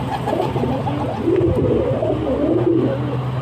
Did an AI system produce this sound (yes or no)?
no